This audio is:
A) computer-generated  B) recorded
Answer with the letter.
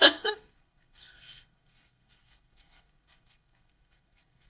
A